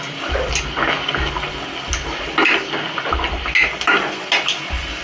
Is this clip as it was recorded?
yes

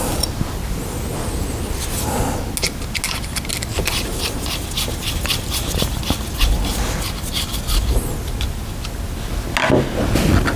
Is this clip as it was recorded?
yes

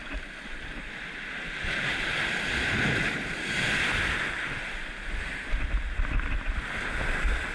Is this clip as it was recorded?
yes